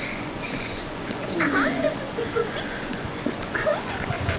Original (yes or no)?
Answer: no